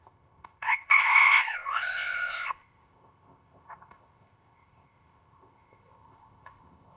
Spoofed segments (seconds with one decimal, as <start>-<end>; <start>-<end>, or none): 0.0-7.0